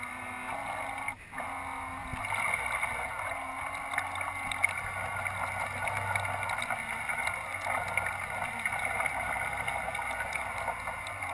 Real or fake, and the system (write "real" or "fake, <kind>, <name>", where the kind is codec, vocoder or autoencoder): real